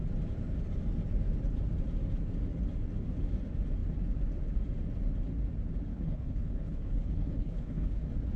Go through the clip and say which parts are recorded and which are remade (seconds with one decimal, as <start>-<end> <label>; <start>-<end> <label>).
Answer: 0.0-5.9 recorded; 5.9-8.0 remade; 8.0-8.4 recorded